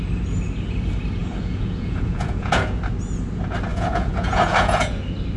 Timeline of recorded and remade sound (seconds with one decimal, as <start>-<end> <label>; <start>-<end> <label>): 0.0-1.2 recorded; 1.2-2.8 remade; 2.8-3.7 recorded; 3.7-5.0 remade; 5.0-5.4 recorded